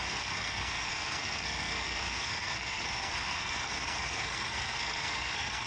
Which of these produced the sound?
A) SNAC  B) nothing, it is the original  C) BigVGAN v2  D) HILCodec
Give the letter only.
A